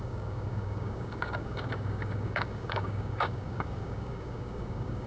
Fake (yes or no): yes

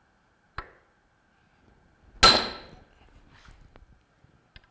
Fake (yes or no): no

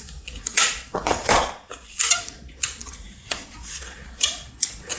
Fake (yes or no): yes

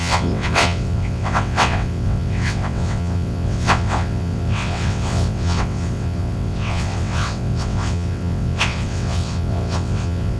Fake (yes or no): yes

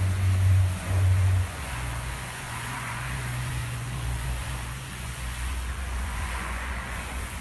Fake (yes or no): yes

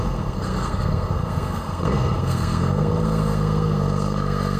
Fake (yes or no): yes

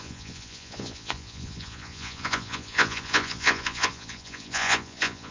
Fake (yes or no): yes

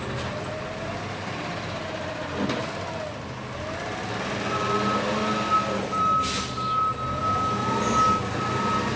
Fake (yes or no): no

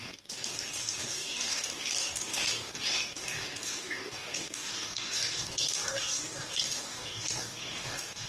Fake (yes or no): yes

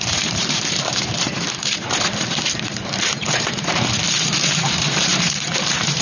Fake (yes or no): yes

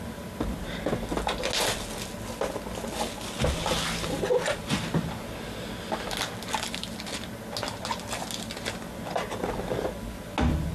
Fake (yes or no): no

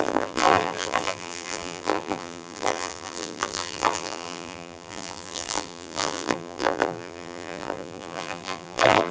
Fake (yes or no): yes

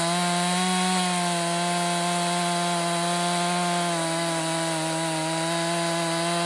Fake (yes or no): no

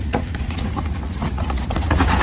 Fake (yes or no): yes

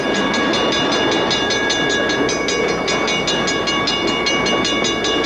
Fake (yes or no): no